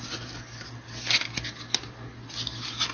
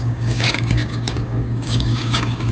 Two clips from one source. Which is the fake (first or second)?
second